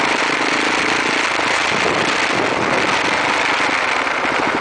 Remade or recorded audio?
recorded